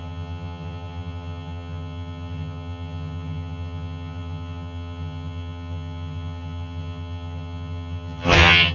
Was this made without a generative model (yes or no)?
no